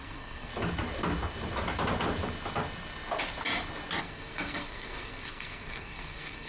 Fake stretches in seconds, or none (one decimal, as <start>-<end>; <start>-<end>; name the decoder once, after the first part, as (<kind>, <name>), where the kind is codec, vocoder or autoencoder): 0.0-0.5 (codec, SNAC); 4.0-6.5